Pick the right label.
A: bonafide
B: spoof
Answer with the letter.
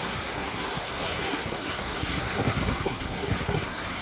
B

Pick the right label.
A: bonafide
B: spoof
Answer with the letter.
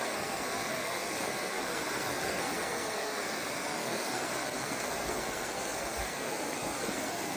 B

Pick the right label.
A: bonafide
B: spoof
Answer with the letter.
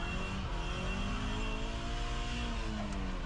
A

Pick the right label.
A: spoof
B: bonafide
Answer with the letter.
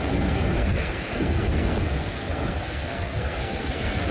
A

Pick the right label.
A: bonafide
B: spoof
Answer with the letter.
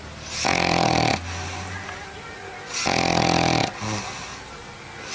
A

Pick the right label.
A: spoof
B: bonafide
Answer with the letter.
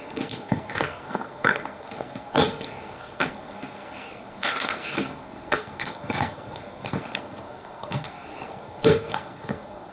A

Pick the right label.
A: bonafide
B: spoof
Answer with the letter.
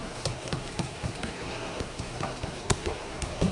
B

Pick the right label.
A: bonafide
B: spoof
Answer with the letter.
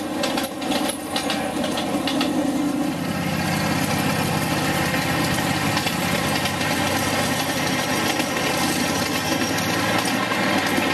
A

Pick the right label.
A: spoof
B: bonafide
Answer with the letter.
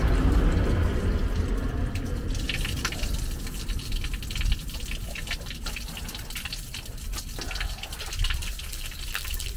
B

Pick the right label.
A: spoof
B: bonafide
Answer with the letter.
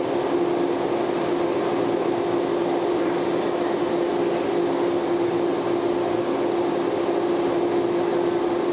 B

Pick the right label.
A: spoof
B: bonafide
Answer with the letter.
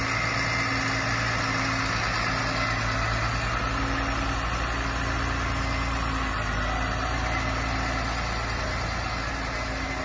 B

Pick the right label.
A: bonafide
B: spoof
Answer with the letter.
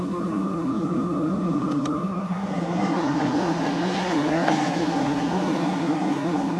B